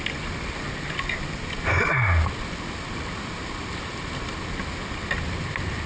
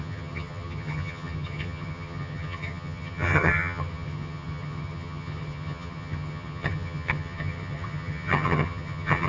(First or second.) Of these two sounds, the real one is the first